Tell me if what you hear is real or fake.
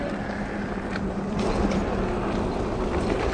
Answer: real